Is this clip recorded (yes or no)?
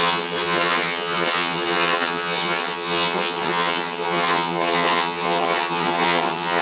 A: no